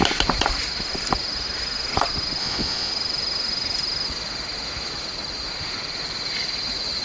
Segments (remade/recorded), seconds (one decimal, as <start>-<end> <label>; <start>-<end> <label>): 0.0-2.4 recorded; 2.4-2.9 remade; 2.9-7.0 recorded